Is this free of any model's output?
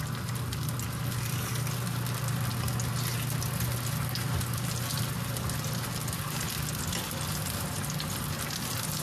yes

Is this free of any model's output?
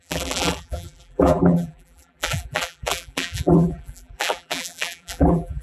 no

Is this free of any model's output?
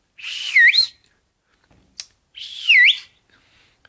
yes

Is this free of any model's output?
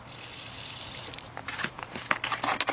yes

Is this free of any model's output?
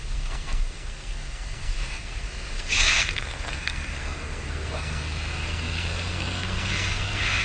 no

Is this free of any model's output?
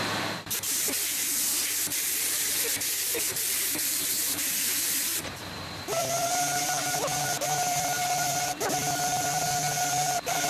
no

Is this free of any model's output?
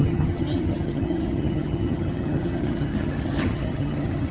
no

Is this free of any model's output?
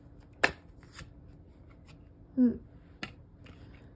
yes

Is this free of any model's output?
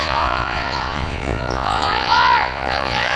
no